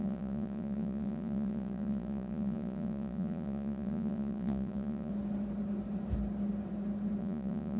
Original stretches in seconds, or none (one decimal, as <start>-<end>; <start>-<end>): 5.1-7.2